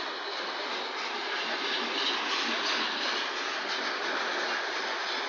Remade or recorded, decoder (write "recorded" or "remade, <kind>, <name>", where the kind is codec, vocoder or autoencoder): recorded